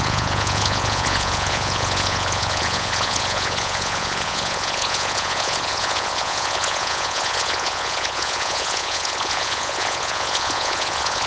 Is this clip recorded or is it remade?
remade